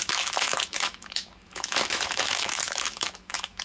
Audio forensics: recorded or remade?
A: remade